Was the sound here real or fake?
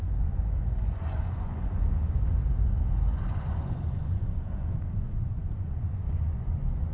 fake